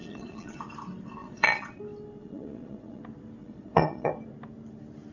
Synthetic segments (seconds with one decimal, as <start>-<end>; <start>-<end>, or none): 0.0-0.6; 1.2-1.8; 2.2-3.0; 3.4-4.1